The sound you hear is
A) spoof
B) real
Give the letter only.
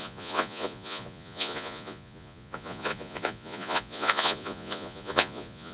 A